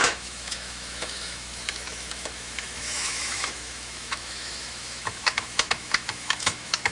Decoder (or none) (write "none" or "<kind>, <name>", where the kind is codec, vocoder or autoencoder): autoencoder, DAC-VAE